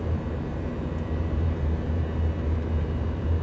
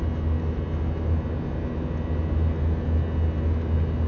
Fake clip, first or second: first